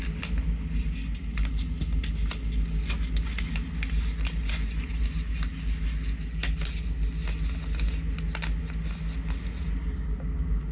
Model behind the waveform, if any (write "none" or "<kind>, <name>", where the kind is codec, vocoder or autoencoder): none